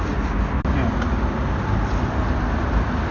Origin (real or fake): real